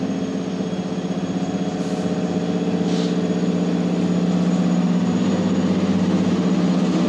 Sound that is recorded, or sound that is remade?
recorded